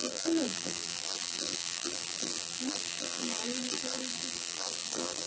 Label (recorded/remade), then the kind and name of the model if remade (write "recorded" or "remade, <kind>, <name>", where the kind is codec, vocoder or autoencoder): remade, vocoder, BigVGAN v2